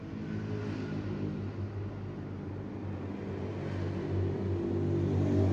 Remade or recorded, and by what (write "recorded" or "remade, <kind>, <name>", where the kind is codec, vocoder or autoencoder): recorded